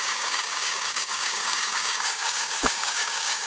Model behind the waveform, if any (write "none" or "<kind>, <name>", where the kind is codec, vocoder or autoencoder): codec, DAC